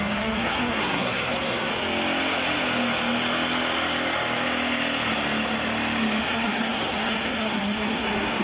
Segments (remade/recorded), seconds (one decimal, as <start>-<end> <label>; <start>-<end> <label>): 0.0-1.7 remade; 1.7-6.2 recorded; 6.2-8.4 remade